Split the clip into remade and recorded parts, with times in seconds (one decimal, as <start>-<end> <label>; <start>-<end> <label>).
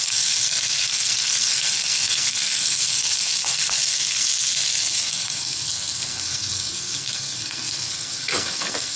0.0-9.0 remade